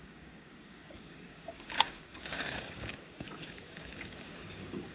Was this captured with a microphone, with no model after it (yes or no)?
no